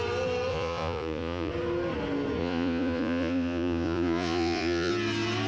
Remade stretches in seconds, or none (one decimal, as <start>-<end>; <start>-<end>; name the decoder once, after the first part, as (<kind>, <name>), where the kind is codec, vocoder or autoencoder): 0.5-1.5 (vocoder, Vocos); 2.4-4.9